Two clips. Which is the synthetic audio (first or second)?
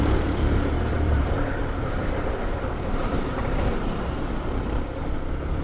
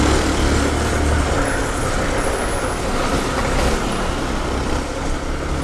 first